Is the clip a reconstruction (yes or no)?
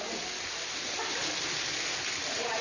no